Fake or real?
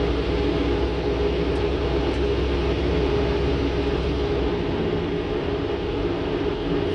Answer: real